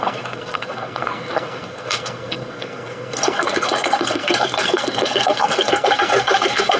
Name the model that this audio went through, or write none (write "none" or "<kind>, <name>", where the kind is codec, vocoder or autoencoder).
codec, SNAC